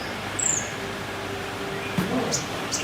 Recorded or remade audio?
recorded